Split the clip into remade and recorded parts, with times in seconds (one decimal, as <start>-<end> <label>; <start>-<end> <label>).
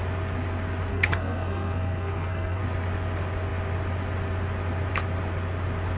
0.0-0.9 recorded; 0.9-2.6 remade; 2.6-6.0 recorded